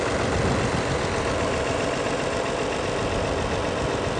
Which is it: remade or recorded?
recorded